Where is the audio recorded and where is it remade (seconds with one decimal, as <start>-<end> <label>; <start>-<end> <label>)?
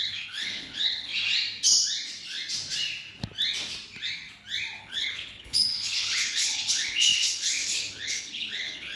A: 0.0-1.1 remade; 1.1-4.8 recorded; 4.8-9.0 remade